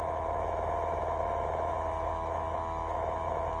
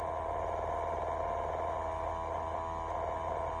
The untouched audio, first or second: second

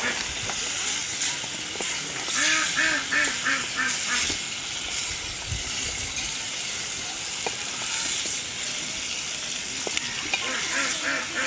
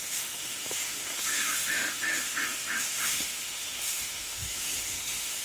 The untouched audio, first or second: first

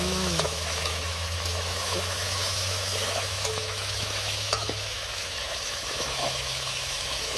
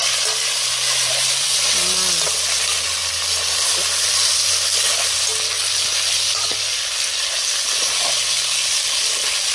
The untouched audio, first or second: second